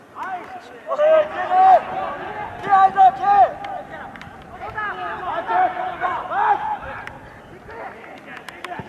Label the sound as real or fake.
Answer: real